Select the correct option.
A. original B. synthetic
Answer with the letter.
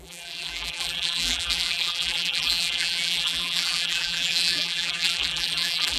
B